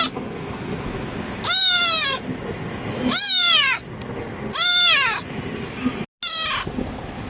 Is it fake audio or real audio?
real